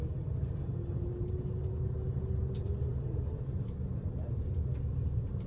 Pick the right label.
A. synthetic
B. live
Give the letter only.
B